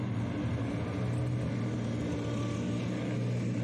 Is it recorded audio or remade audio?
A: recorded